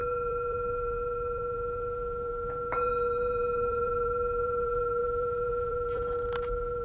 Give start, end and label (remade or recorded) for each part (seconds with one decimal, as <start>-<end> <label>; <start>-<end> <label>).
0.0-6.8 remade